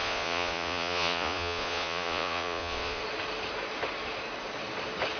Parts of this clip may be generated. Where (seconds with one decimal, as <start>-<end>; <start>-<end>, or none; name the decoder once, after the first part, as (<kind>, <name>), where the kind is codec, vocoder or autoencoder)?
0.0-3.0 (vocoder, Vocos)